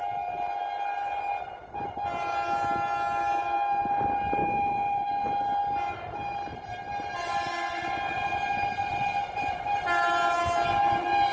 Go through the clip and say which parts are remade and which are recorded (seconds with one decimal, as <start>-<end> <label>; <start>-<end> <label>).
0.0-4.4 recorded; 4.4-5.1 remade; 5.1-11.3 recorded